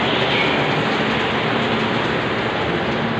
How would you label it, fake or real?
real